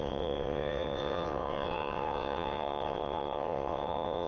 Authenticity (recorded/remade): remade